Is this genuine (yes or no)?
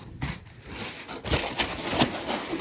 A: yes